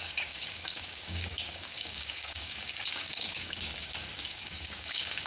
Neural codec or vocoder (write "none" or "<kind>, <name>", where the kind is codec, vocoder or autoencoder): codec, DAC